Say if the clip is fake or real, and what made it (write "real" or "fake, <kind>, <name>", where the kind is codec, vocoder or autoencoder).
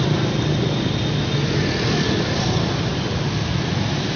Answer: real